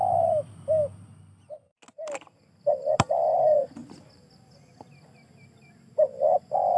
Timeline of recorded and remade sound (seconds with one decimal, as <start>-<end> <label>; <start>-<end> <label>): 0.0-6.8 recorded